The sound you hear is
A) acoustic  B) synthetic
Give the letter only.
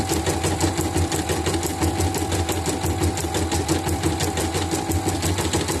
A